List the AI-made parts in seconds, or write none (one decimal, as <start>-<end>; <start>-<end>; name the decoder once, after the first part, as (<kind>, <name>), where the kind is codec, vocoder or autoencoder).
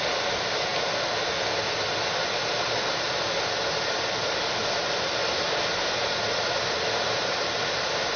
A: none